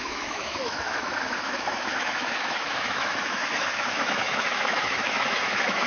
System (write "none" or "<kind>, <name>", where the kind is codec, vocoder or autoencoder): autoencoder, DAC-VAE